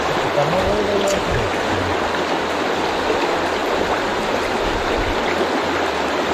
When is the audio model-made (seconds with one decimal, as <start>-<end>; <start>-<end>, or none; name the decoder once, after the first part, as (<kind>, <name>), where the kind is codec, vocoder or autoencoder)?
3.6-5.0 (vocoder, BigVGAN v2)